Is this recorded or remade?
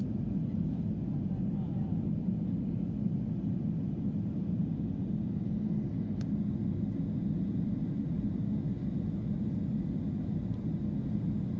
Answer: recorded